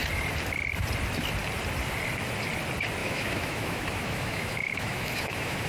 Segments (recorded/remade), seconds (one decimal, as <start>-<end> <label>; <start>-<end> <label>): 0.0-3.0 recorded; 3.0-5.7 remade